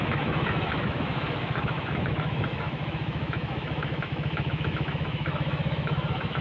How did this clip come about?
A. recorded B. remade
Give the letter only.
B